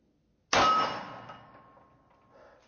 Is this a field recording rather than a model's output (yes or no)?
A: yes